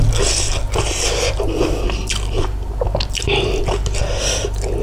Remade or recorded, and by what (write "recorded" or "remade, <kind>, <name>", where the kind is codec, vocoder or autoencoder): recorded